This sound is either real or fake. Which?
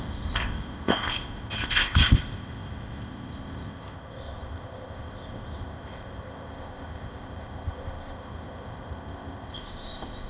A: fake